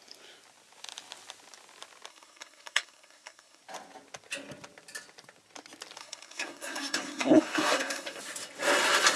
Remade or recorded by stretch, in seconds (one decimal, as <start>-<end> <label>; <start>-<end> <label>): 0.0-2.1 recorded; 2.1-3.6 remade; 3.6-6.0 recorded; 6.0-8.2 remade; 8.2-9.2 recorded